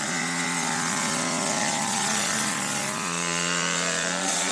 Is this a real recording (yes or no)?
no